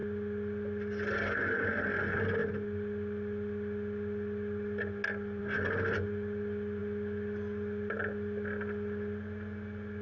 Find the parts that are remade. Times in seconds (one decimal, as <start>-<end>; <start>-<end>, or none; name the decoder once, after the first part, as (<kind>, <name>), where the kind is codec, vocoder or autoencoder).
none